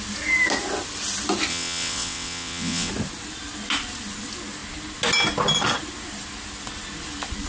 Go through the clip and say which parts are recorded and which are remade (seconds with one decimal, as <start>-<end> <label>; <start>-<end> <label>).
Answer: 0.0-1.5 recorded; 1.5-2.9 remade; 2.9-7.5 recorded